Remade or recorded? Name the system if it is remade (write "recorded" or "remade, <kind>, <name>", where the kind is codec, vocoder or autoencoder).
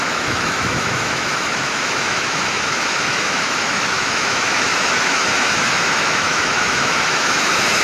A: remade, autoencoder, DAC-VAE